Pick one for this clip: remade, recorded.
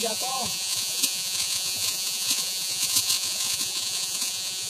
remade